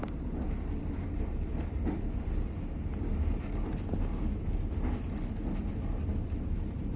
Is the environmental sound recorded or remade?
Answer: recorded